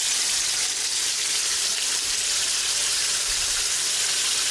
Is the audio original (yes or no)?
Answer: yes